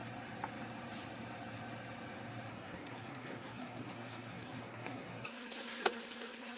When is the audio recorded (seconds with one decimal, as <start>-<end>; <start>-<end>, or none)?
0.0-2.5